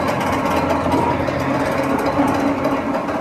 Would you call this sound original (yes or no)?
yes